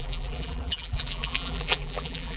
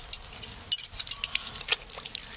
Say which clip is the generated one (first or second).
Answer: first